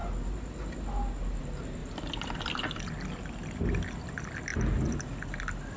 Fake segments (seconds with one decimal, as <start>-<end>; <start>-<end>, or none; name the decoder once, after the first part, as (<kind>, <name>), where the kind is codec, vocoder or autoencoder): none